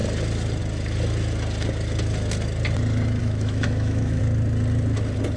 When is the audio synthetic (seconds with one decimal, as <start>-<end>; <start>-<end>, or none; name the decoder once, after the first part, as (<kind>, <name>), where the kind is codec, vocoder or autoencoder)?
3.2-4.2 (autoencoder, DAC-VAE)